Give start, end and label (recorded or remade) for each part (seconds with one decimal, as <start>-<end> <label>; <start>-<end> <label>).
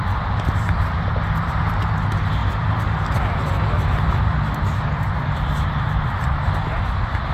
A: 0.0-2.4 recorded; 2.4-6.8 remade; 6.8-7.3 recorded